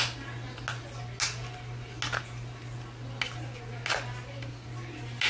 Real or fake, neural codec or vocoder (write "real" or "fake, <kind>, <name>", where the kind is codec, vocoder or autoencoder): real